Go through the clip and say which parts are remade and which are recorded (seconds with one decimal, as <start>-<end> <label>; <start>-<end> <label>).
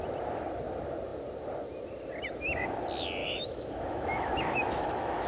0.0-3.2 recorded; 3.2-5.3 remade